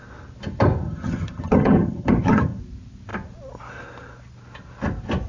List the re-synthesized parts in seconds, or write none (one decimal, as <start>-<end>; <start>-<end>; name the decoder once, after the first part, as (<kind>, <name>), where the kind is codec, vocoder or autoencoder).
0.8-2.6 (vocoder, HiFi-GAN)

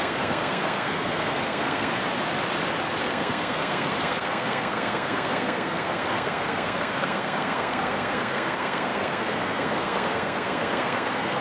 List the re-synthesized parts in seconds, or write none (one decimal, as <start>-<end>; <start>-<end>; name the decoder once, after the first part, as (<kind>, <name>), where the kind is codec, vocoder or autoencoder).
0.0-2.0 (codec, SNAC); 3.0-11.4

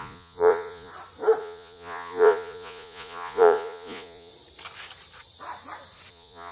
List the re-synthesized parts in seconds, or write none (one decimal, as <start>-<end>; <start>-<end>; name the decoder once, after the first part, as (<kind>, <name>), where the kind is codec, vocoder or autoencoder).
0.0-0.9 (vocoder, Vocos); 1.4-4.3; 6.1-6.5

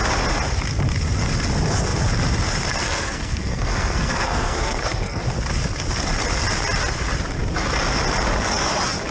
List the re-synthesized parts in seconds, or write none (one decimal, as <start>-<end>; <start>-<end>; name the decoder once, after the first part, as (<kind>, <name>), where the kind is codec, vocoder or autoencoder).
2.8-5.2 (codec, SNAC)

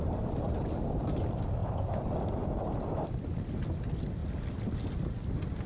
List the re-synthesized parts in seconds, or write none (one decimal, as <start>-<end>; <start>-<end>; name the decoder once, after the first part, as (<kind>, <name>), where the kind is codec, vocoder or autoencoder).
none